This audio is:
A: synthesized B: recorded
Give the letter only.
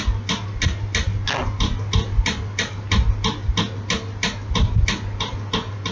B